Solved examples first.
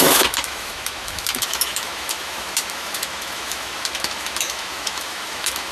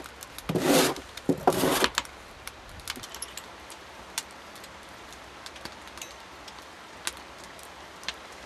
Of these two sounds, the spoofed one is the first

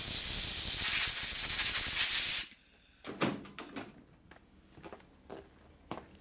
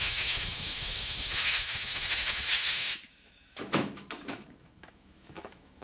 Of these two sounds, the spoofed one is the second